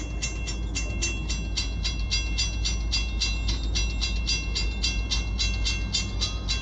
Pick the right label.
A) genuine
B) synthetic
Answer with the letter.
A